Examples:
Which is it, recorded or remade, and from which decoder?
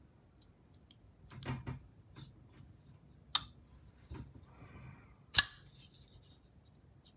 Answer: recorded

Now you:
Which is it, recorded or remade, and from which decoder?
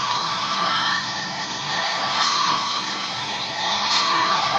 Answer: remade, codec, SNAC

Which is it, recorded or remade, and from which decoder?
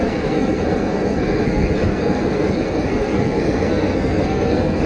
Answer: remade, codec, SNAC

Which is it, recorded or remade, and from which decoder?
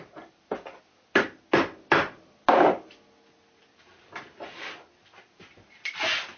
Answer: recorded